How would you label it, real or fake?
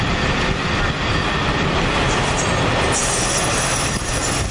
fake